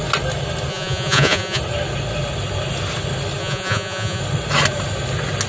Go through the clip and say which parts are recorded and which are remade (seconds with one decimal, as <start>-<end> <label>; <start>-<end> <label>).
0.0-0.7 recorded; 0.7-1.6 remade; 1.6-3.4 recorded; 3.4-4.2 remade; 4.2-5.5 recorded